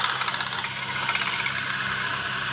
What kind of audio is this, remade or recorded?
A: recorded